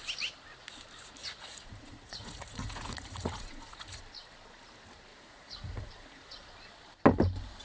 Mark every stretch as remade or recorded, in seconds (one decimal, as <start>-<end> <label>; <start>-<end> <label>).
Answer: 0.0-1.2 recorded; 1.2-4.0 remade; 4.0-5.1 recorded; 5.1-6.5 remade; 6.5-7.6 recorded